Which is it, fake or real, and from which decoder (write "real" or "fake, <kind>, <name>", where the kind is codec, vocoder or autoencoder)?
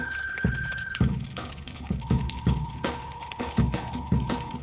fake, codec, HILCodec